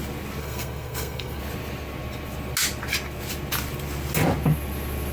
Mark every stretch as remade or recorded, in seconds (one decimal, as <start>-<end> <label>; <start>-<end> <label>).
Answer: 0.0-0.4 recorded; 0.4-1.4 remade; 1.4-5.1 recorded